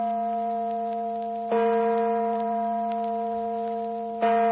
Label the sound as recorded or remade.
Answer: recorded